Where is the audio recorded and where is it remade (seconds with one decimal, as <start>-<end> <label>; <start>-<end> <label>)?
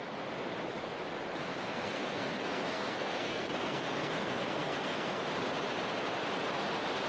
0.0-1.5 recorded; 1.5-5.2 remade; 5.2-7.1 recorded